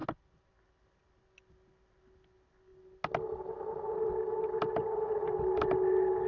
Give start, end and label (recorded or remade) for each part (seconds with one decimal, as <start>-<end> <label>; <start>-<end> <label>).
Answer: 0.0-6.3 recorded